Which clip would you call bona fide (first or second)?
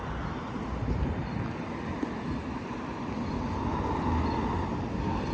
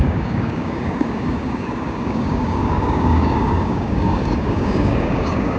first